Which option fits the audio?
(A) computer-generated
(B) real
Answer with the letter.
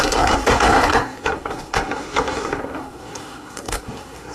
A